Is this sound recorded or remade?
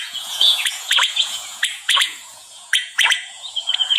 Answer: remade